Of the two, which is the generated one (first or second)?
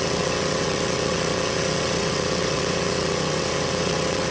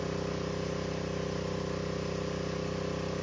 first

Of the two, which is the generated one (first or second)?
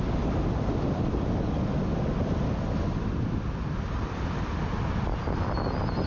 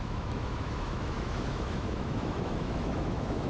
second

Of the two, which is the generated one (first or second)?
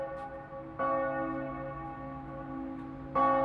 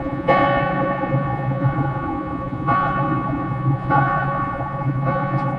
second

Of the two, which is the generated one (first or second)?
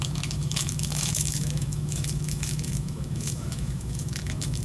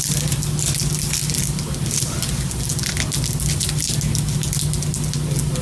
first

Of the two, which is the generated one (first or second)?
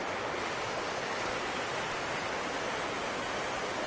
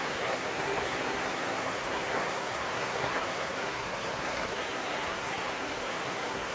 second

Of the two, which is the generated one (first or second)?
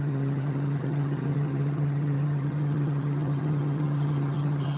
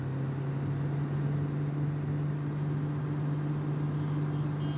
first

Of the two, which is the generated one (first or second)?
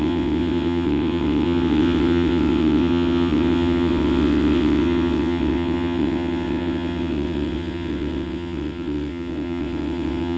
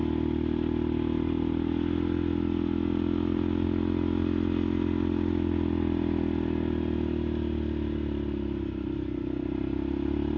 first